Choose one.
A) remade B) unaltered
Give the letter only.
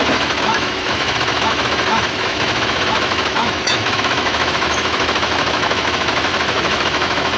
A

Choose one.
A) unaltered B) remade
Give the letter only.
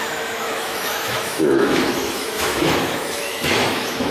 B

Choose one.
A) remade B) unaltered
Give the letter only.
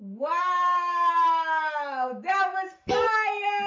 A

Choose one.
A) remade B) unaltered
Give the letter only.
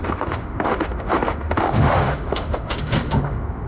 A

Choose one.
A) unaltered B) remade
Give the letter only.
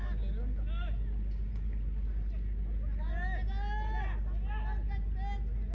A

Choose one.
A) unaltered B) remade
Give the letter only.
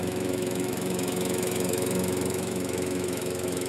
B